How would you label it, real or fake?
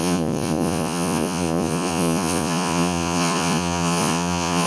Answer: fake